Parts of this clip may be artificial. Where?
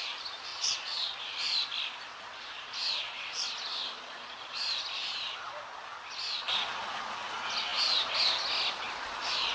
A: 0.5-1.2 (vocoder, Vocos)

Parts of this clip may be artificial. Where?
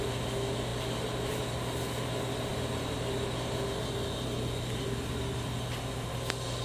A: none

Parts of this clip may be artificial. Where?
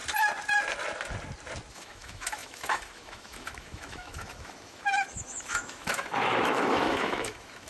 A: 1.7-7.7 (autoencoder, DAC-VAE)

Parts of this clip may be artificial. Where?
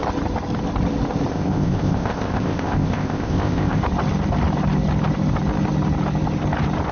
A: 1.3-3.8 (codec, ZipCodec)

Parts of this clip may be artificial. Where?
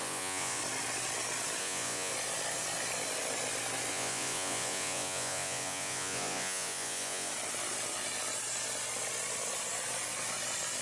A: 0.0-0.6 (vocoder, Vocos); 1.6-2.1; 3.9-7.3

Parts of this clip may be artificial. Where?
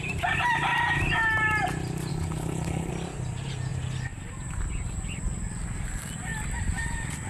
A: 2.1-2.9 (codec, HILCodec)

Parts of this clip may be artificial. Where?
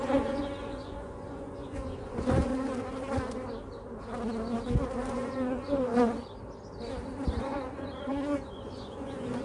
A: 0.0-2.5 (vocoder, Vocos); 5.1-5.9; 7.4-9.4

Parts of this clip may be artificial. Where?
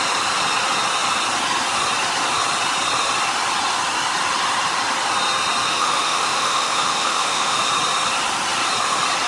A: 5.7-7.6 (autoencoder, DAC-VAE)